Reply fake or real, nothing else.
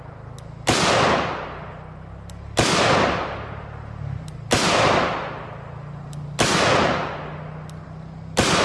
real